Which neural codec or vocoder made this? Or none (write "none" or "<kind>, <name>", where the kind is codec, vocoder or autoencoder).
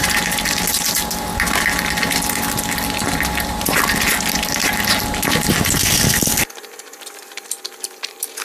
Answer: none